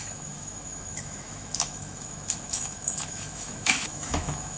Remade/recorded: remade